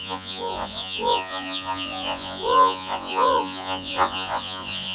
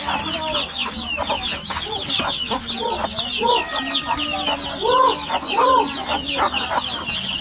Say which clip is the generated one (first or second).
first